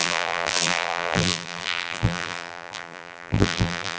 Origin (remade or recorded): remade